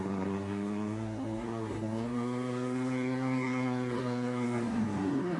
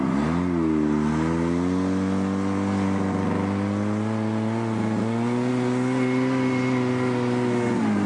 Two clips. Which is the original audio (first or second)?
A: second